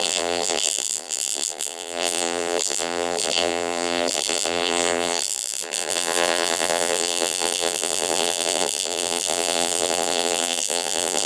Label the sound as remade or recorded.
remade